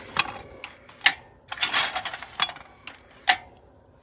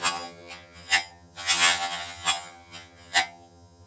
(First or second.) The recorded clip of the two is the first